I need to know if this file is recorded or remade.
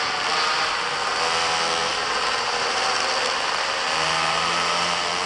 recorded